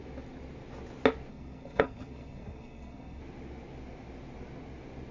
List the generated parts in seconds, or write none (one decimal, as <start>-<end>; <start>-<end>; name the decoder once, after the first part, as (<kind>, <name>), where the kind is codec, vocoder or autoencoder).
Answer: 1.3-3.2 (codec, SNAC)